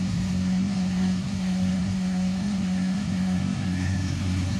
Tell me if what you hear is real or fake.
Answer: fake